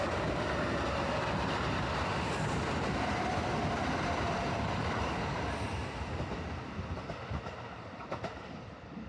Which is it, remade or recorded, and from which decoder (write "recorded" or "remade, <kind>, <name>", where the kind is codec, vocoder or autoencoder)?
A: recorded